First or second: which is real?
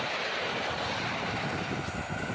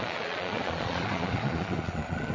first